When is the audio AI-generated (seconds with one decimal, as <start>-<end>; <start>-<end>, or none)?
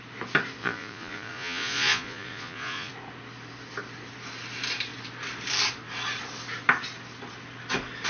0.6-2.9